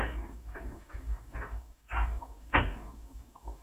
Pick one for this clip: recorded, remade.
remade